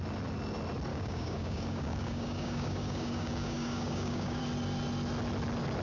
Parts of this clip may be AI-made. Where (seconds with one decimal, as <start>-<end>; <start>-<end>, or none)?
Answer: 0.9-4.4

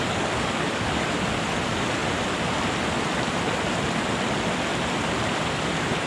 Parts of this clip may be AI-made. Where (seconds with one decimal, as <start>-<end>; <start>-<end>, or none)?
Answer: 0.0-0.9

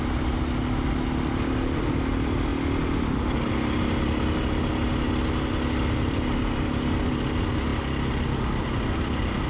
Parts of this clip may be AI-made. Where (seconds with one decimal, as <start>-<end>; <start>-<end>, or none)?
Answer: none

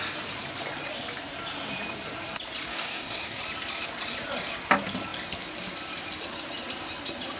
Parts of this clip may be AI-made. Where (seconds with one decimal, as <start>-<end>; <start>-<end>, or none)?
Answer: 2.7-3.4